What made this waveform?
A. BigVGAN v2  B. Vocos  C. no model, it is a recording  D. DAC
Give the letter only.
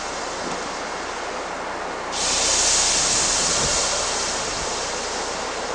C